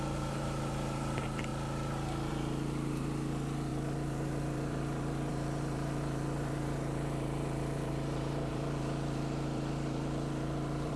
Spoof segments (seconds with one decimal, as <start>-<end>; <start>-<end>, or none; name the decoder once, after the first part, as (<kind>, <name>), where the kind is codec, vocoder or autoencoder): 0.0-1.5 (vocoder, BigVGAN v2); 2.3-11.0